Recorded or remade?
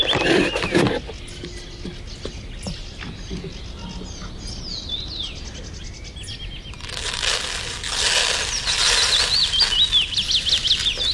recorded